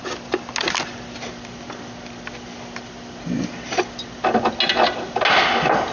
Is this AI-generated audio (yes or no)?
no